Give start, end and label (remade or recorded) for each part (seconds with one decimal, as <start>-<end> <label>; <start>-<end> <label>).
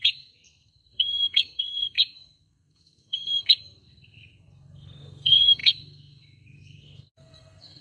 0.0-7.8 remade